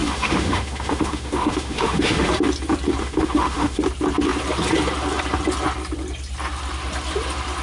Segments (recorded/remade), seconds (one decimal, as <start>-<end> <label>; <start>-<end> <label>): 0.0-2.3 remade; 2.3-3.0 recorded; 3.0-3.8 remade; 3.8-7.6 recorded